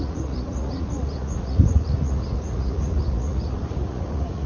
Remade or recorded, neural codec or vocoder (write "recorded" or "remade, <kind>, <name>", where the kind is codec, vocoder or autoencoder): remade, vocoder, Vocos